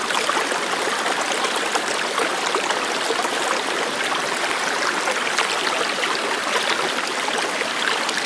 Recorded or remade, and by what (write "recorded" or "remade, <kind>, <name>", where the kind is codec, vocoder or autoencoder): recorded